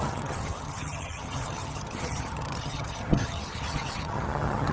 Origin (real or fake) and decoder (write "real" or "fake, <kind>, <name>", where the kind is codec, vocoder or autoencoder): fake, vocoder, HiFi-GAN